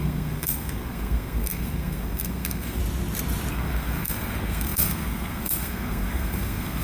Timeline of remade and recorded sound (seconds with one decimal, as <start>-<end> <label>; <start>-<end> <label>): 0.0-2.8 remade; 2.8-3.5 recorded; 3.5-6.8 remade